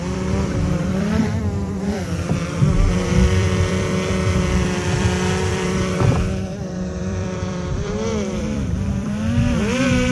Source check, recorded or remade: remade